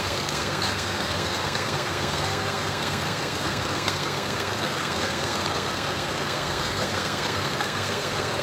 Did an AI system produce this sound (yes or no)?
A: yes